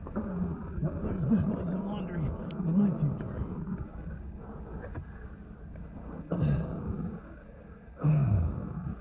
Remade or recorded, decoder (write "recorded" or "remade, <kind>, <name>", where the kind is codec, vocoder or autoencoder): recorded